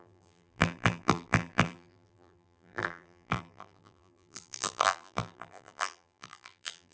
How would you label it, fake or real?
fake